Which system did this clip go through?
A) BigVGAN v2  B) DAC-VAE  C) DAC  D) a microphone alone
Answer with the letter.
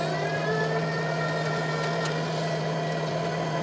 D